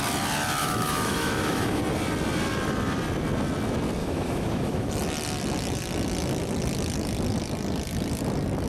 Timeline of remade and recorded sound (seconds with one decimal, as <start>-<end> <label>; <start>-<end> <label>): 0.0-0.6 recorded; 0.6-1.8 remade; 1.8-4.0 recorded; 4.0-4.9 remade; 4.9-8.7 recorded